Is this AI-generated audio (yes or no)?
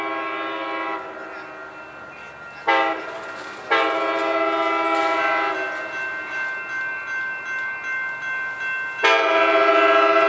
no